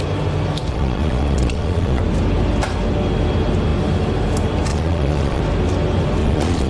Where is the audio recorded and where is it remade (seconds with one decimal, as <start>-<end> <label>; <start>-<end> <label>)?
0.0-0.7 recorded; 0.7-2.0 remade; 2.0-4.7 recorded; 4.7-5.4 remade; 5.4-6.2 recorded; 6.2-6.7 remade